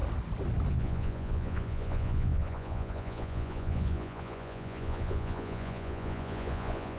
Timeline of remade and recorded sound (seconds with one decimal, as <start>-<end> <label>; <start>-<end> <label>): 0.0-0.7 recorded; 0.7-7.0 remade